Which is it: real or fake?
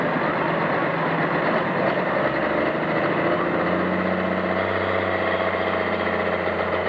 real